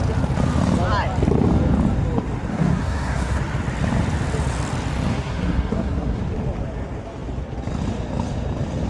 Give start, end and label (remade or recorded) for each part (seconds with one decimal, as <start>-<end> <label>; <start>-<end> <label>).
0.0-2.5 recorded; 2.5-3.4 remade; 3.4-5.1 recorded; 5.1-6.2 remade; 6.2-8.9 recorded